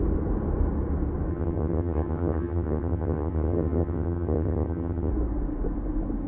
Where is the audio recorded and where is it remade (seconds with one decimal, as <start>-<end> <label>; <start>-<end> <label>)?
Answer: 0.0-1.3 recorded; 1.3-5.1 remade; 5.1-6.3 recorded